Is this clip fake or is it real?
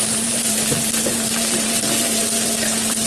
fake